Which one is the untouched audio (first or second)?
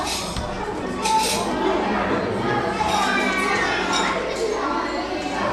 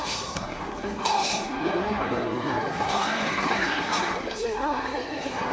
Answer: first